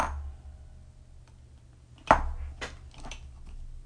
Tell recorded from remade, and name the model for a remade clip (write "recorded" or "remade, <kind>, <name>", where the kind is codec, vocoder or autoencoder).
recorded